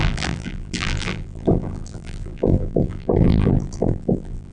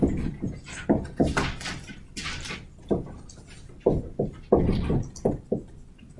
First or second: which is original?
second